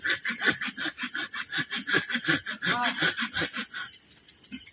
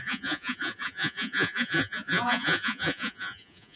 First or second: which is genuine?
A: first